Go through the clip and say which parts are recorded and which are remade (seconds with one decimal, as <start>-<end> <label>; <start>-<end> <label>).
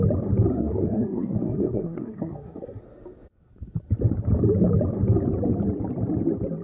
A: 0.0-0.5 recorded; 0.5-2.8 remade; 2.8-6.6 recorded